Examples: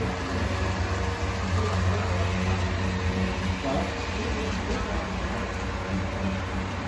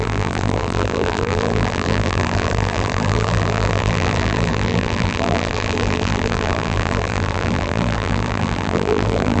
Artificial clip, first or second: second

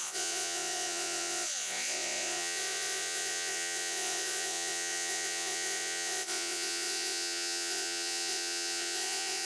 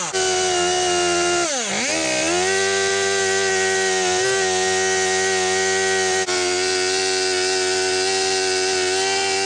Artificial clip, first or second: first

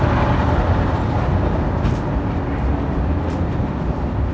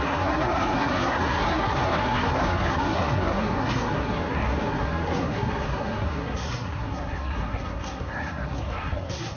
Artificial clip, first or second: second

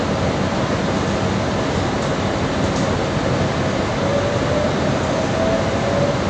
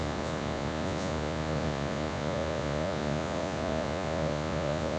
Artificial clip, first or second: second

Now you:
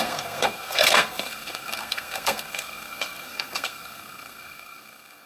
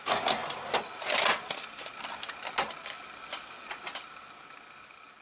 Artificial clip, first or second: first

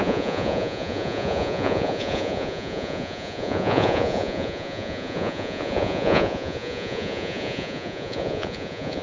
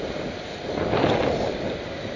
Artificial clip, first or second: first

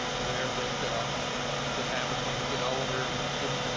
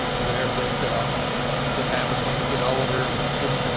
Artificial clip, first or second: second